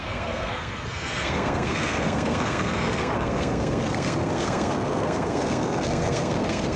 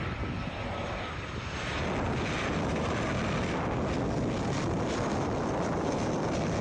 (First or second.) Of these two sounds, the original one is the second